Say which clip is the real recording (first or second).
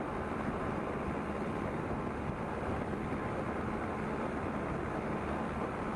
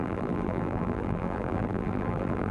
first